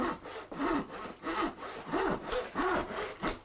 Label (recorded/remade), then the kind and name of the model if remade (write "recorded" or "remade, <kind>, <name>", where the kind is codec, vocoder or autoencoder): recorded